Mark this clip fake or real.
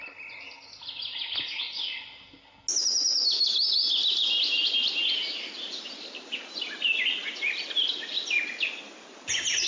real